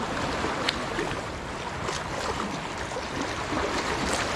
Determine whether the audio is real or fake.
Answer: real